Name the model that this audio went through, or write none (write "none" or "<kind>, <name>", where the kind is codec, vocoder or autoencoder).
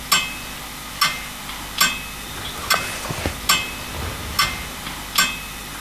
none